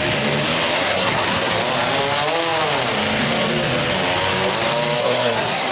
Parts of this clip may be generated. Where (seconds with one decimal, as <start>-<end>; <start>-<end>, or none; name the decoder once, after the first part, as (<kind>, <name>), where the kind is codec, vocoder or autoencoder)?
0.8-1.5 (codec, SNAC); 5.0-5.7